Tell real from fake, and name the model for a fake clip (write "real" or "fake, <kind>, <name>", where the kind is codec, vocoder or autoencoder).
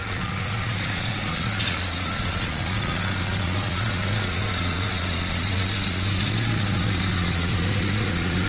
fake, vocoder, Vocos